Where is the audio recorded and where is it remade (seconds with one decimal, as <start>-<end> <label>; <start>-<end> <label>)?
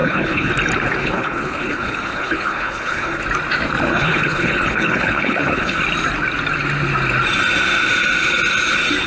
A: 0.0-0.5 remade; 0.5-1.0 recorded; 1.0-3.2 remade; 3.2-3.9 recorded; 3.9-5.8 remade; 5.8-9.1 recorded